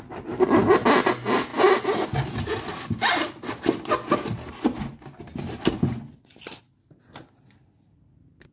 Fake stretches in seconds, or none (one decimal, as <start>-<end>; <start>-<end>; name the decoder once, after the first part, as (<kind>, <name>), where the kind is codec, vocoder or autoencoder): none

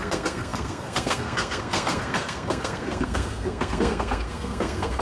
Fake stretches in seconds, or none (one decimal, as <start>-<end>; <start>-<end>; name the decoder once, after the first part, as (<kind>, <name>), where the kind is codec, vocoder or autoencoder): 0.0-5.0 (codec, SNAC)

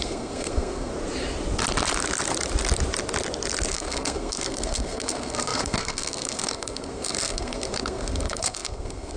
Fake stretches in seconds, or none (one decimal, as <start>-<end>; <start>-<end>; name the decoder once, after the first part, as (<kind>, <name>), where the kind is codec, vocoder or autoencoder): 0.0-0.9 (codec, SNAC); 3.7-9.2

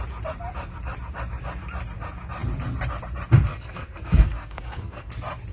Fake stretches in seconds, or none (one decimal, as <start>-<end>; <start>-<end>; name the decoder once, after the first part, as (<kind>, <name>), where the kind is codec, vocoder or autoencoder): 3.5-5.1 (codec, SNAC)

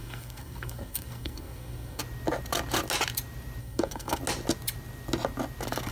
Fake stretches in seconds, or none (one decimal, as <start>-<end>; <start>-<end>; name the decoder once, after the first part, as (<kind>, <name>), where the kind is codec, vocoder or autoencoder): 0.0-2.0 (codec, SNAC); 3.6-4.2

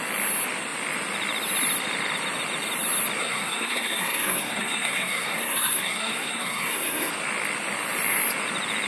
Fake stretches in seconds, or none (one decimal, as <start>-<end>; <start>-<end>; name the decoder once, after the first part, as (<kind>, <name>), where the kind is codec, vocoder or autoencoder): 3.2-7.1 (codec, SNAC)